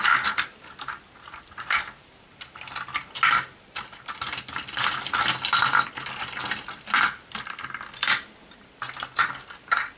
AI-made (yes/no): no